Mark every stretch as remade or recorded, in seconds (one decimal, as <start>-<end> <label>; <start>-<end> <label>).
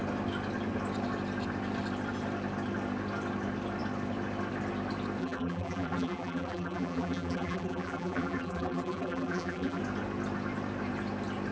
0.0-5.2 recorded; 5.2-9.8 remade; 9.8-11.5 recorded